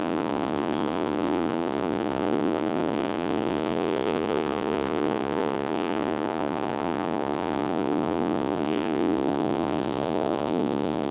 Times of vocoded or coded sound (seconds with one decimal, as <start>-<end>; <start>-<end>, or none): 0.0-11.1